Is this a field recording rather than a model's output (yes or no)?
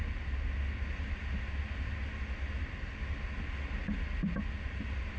yes